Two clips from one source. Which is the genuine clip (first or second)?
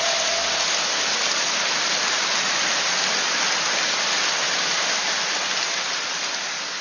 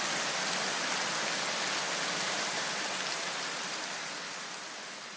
second